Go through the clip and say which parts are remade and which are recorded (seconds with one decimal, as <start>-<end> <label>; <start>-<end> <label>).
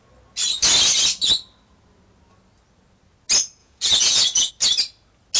0.0-3.6 recorded; 3.6-4.5 remade; 4.5-5.4 recorded